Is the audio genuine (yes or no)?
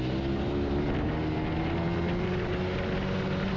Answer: yes